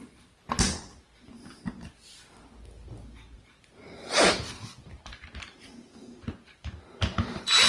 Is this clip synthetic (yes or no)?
no